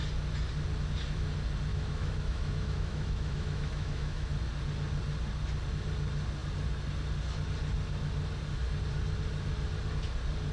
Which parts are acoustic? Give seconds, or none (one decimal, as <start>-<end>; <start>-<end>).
0.0-1.7; 4.3-10.5